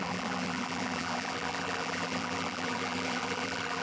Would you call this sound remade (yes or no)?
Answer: yes